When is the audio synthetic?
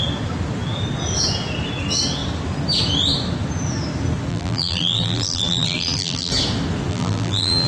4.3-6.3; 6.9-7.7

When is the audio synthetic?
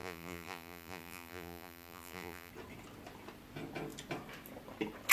0.0-2.5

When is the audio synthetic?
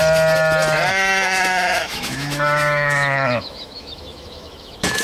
0.9-5.0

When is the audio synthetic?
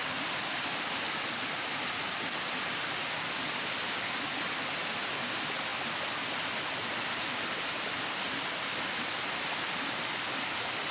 none